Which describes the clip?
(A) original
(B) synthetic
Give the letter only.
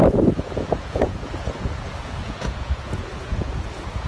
B